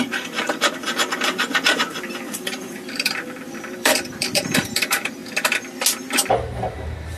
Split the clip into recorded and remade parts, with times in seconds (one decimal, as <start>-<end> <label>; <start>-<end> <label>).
0.0-5.2 remade; 5.2-6.3 recorded; 6.3-7.2 remade